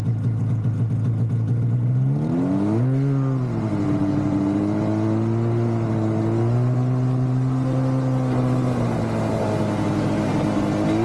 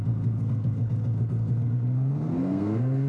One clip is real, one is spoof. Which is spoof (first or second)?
second